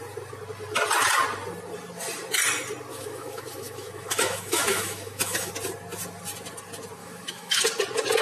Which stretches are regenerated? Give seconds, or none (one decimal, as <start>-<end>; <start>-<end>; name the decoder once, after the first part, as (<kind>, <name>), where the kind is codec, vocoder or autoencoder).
2.9-5.5 (autoencoder, DAC-VAE); 7.0-7.6